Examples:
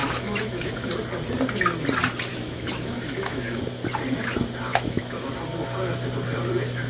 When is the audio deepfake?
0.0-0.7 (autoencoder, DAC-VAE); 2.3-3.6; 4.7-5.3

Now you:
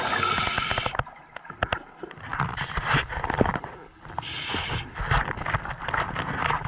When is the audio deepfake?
none

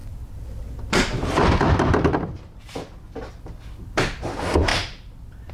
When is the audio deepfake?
0.0-3.3 (vocoder, BigVGAN v2); 4.7-5.5